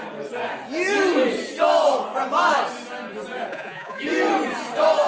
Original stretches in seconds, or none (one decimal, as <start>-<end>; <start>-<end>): 0.0-3.5; 4.0-5.1